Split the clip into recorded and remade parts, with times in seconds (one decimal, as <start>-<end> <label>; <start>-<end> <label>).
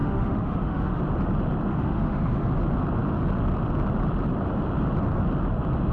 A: 0.0-1.0 remade; 1.0-1.7 recorded; 1.7-2.5 remade; 2.5-5.9 recorded